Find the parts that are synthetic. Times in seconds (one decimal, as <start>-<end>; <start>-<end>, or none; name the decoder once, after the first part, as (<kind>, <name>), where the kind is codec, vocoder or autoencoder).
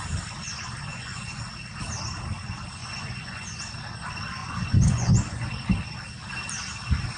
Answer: 0.9-1.4 (vocoder, Vocos); 2.8-3.6; 4.4-5.5